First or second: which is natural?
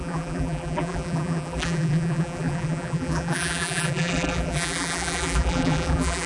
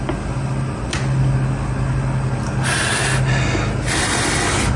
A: second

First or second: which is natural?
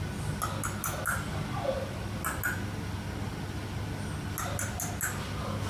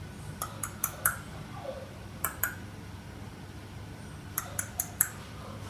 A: first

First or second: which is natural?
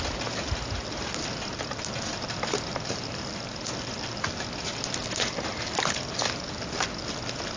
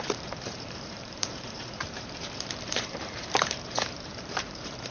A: first